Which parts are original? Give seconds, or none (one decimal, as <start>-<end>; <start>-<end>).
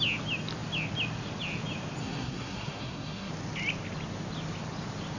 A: 0.0-2.0; 3.3-5.2